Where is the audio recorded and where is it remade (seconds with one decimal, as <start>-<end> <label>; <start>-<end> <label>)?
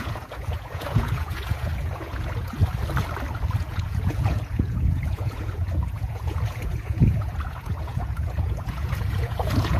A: 0.0-2.6 remade; 2.6-3.6 recorded; 3.6-9.8 remade